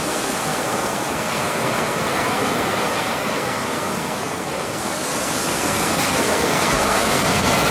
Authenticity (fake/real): fake